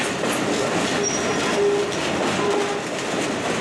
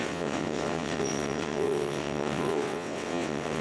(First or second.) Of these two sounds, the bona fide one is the first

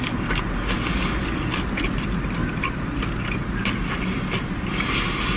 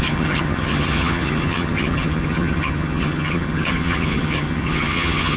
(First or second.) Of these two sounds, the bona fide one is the first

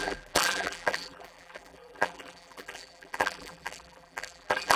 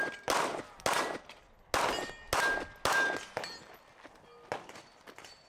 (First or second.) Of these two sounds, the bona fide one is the second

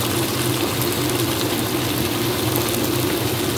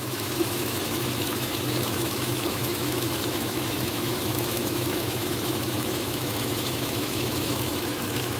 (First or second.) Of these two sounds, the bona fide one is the first